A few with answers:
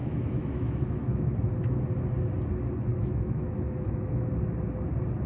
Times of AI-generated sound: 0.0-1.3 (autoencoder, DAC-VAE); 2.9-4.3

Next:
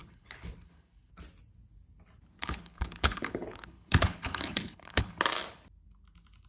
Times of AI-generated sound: 0.0-1.1 (codec, HILCodec); 2.4-5.2

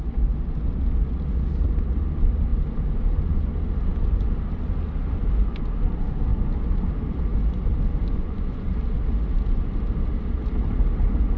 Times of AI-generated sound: 8.1-8.7 (vocoder, Vocos)

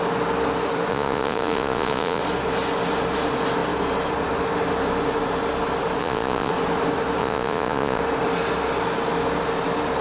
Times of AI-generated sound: 0.9-2.2 (vocoder, Vocos); 6.0-6.5; 7.2-8.0

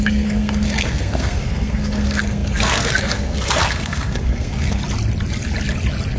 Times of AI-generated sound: 0.0-4.8 (codec, SNAC)

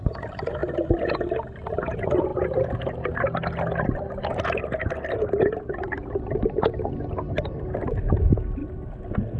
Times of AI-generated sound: 0.0-0.6 (vocoder, BigVGAN v2); 1.7-8.6

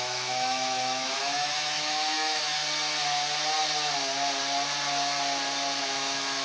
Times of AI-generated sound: 0.0-2.6 (autoencoder, DAC-VAE); 5.8-6.4